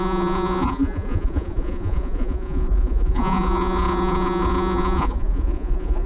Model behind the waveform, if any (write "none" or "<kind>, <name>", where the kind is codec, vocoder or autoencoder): vocoder, Vocos